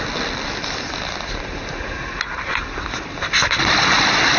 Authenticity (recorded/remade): recorded